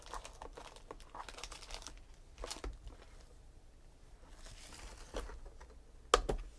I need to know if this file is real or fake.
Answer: real